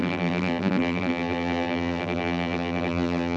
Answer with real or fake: fake